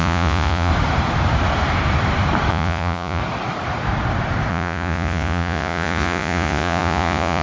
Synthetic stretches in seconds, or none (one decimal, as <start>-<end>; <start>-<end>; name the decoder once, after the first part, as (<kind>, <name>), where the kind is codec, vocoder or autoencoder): 0.0-0.7 (vocoder, Vocos); 2.5-3.2; 4.5-7.4